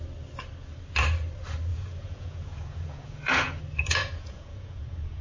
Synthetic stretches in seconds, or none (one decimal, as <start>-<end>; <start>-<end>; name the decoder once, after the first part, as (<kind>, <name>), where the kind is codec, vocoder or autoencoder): 1.7-3.6 (vocoder, Vocos); 4.0-5.2